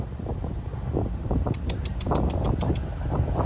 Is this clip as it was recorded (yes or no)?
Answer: no